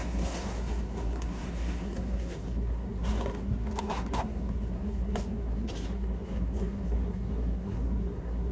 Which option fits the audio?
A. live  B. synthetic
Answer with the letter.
B